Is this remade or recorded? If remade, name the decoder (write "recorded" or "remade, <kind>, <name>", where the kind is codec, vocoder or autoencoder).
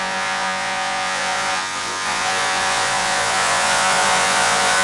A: remade, vocoder, Vocos